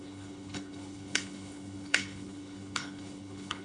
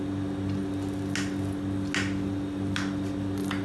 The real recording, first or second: second